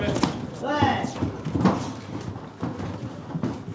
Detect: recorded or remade recorded